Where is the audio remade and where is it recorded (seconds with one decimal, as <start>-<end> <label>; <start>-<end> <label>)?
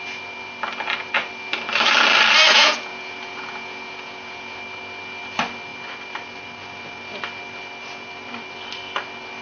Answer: 0.0-2.5 recorded; 2.5-4.6 remade; 4.6-9.4 recorded